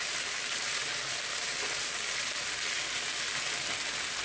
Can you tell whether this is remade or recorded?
recorded